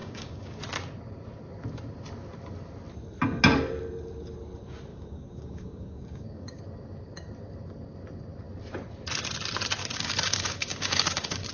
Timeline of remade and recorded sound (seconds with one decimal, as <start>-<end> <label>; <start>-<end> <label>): 0.0-0.6 remade; 0.6-4.9 recorded; 4.9-6.6 remade; 6.6-9.8 recorded; 9.8-11.5 remade